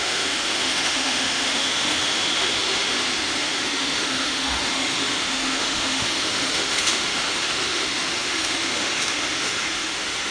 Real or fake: fake